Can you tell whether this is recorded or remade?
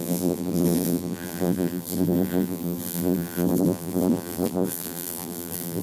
remade